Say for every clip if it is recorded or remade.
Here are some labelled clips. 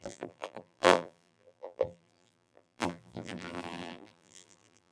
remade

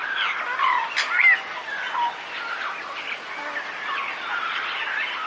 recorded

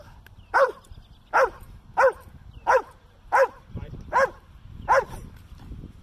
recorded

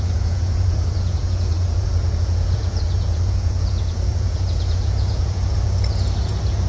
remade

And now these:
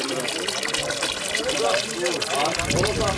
recorded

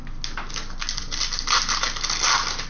recorded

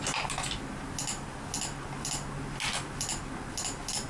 recorded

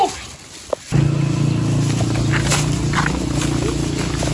recorded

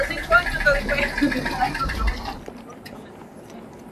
recorded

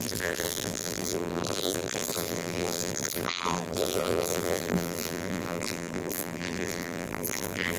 remade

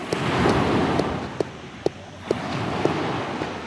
recorded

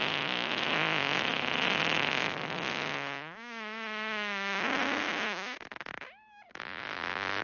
recorded